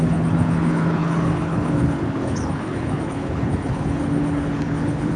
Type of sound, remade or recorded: remade